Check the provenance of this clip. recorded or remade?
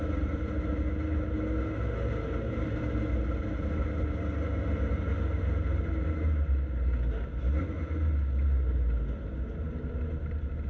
recorded